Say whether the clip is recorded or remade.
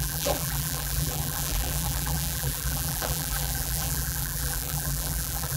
remade